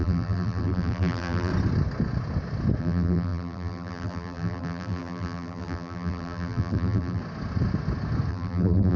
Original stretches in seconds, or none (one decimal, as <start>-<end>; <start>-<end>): 1.5-2.8; 7.2-8.3